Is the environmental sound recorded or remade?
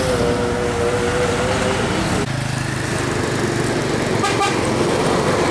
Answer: recorded